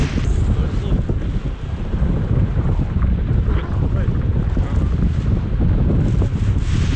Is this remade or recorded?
recorded